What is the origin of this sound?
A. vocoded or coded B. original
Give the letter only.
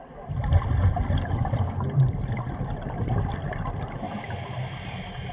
B